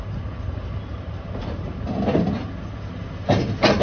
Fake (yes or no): no